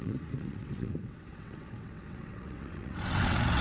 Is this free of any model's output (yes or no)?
no